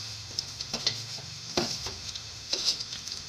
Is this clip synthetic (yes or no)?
yes